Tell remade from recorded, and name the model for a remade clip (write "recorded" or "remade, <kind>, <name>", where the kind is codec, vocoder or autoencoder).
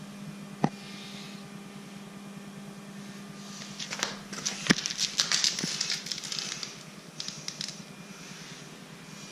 recorded